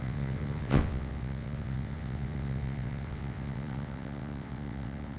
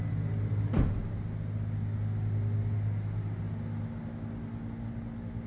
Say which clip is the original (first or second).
second